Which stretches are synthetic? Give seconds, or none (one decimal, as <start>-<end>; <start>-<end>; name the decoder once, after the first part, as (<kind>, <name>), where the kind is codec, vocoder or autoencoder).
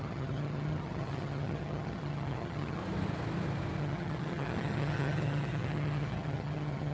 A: 0.0-2.8 (vocoder, HiFi-GAN); 3.8-6.9